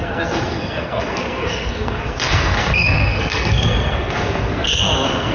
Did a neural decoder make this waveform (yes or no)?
yes